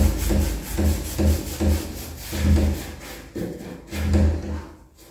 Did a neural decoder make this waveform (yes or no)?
no